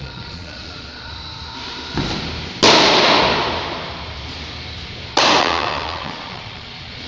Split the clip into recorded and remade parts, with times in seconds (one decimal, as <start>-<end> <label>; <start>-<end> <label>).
0.0-1.1 remade; 1.1-5.4 recorded; 5.4-7.1 remade